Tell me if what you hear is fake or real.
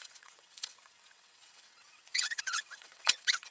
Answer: fake